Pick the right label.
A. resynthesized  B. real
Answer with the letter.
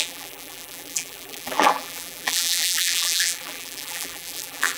A